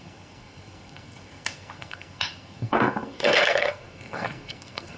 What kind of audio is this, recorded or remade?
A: remade